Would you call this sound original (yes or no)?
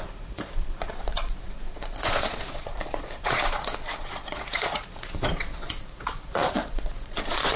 no